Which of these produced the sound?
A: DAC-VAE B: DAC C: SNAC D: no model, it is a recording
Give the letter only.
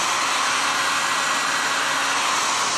D